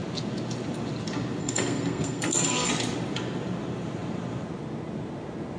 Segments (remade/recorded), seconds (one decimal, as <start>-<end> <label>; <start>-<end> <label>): 0.0-1.4 recorded; 1.4-2.7 remade; 2.7-5.6 recorded

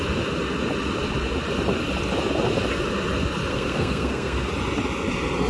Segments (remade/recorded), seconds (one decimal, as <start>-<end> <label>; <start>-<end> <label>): 0.0-3.5 recorded; 3.5-4.5 remade; 4.5-5.5 recorded

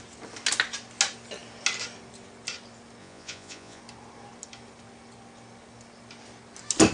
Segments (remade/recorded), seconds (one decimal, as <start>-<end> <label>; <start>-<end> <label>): 0.0-3.0 recorded; 3.0-3.8 remade; 3.8-6.9 recorded

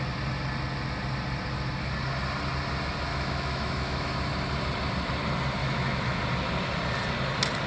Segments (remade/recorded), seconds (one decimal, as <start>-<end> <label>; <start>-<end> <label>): 0.0-3.1 recorded; 3.1-4.1 remade; 4.1-5.6 recorded; 5.6-6.2 remade; 6.2-7.7 recorded

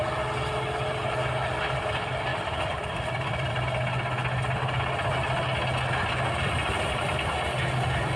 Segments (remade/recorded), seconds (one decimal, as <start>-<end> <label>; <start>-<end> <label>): 0.0-2.3 recorded; 2.3-3.5 remade; 3.5-8.2 recorded

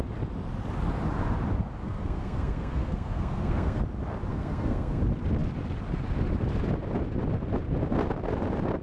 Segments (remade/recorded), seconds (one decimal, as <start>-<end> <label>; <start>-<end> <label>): 0.0-1.8 recorded; 1.8-3.8 remade; 3.8-4.3 recorded; 4.3-5.0 remade; 5.0-8.8 recorded

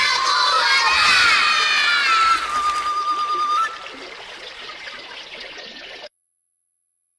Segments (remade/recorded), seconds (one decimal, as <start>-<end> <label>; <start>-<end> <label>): 0.0-0.7 remade; 0.7-4.2 recorded; 4.2-7.2 remade